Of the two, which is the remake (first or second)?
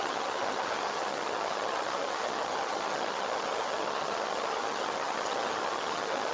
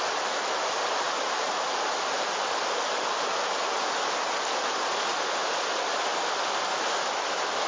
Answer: first